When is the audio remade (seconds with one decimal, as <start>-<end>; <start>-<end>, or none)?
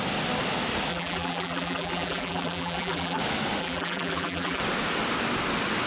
0.9-3.2; 3.6-4.6